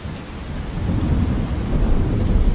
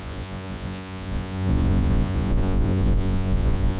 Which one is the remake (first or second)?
second